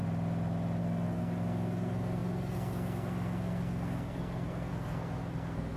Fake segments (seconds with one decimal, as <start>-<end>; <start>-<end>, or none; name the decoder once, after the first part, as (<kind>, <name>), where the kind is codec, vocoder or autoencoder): 0.8-5.8 (codec, SNAC)